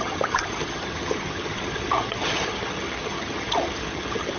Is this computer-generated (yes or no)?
yes